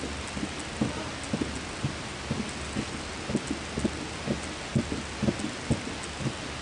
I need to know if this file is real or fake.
real